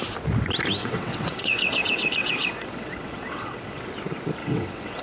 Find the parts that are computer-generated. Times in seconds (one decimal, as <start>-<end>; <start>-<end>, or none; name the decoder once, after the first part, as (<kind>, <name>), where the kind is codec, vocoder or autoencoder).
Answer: 0.8-3.8 (vocoder, WaveNeXt); 4.4-5.0